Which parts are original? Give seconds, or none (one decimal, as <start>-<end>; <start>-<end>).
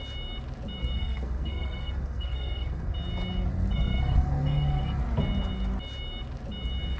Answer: 0.0-0.8; 2.9-3.5; 5.0-7.0